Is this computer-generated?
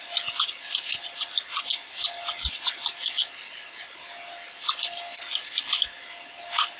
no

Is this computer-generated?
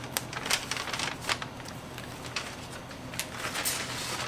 no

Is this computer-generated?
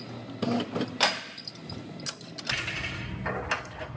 no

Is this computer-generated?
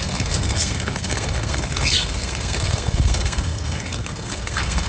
yes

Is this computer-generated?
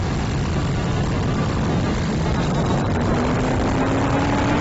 no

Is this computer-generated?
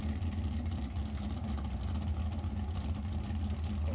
no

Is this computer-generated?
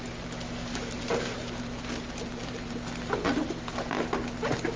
no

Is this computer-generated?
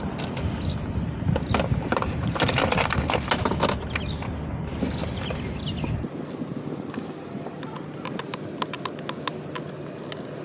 no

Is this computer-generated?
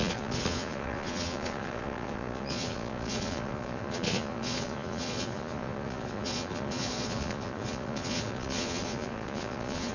yes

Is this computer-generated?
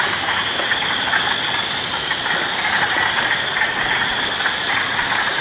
no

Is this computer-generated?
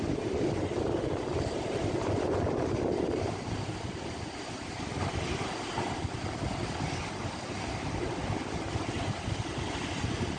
no